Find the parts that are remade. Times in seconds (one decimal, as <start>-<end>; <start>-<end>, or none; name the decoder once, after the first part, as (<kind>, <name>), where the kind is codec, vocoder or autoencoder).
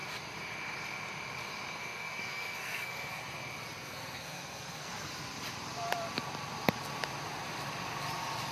1.8-3.2 (codec, SNAC); 3.8-4.9